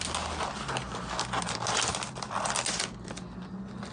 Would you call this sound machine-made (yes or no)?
no